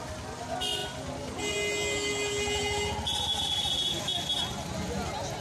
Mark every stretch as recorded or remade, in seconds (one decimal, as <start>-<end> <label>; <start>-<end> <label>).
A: 0.0-5.4 recorded